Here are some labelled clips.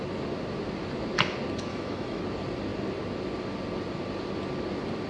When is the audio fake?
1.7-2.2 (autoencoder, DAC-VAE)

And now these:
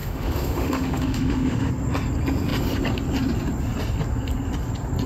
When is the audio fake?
0.0-1.7 (autoencoder, DAC-VAE)

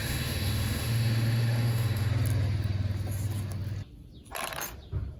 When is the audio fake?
0.0-2.1 (autoencoder, DAC-VAE)

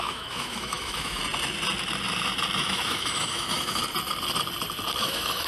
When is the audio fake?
0.0-1.2 (autoencoder, DAC-VAE); 2.6-3.8; 5.0-5.5

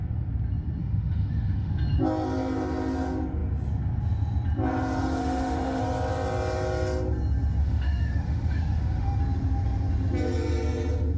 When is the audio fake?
0.8-1.7 (autoencoder, DAC-VAE); 5.0-5.8; 7.6-9.2

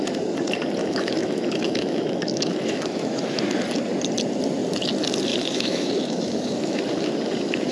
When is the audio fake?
0.8-3.4 (autoencoder, DAC-VAE); 5.3-6.8

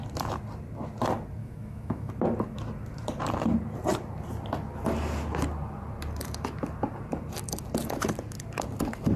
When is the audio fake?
1.4-2.1 (autoencoder, DAC-VAE)

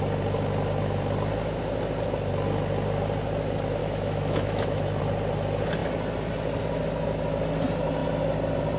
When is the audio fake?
3.8-5.0 (autoencoder, DAC-VAE)